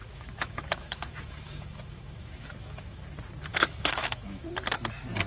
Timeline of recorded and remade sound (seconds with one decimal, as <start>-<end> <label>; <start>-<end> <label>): 0.0-3.0 remade; 3.0-3.5 recorded; 3.5-4.5 remade; 4.5-5.3 recorded